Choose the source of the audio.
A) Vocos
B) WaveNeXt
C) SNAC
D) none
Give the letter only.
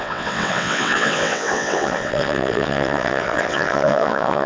B